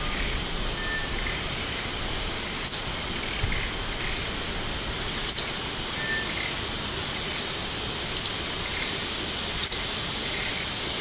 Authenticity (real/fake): real